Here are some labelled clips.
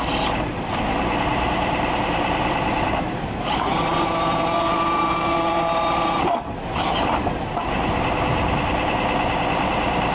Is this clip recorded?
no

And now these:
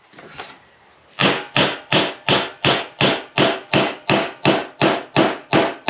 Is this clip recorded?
yes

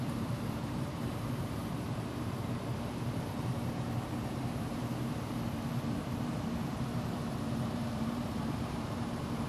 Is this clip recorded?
no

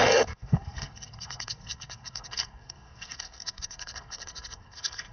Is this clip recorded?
no